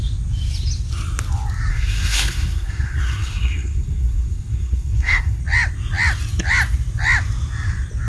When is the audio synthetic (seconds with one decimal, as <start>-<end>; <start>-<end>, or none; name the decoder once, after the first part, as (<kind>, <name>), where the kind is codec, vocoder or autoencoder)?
1.7-5.4 (codec, SNAC)